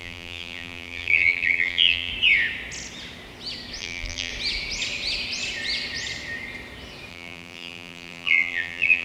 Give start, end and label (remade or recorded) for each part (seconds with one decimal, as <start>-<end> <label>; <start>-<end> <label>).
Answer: 0.0-2.1 remade; 2.1-3.8 recorded; 3.8-4.3 remade; 4.3-7.1 recorded; 7.1-9.0 remade